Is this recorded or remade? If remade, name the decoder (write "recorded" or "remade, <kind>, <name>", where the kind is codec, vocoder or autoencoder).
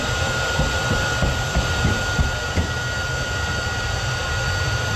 remade, vocoder, BigVGAN v2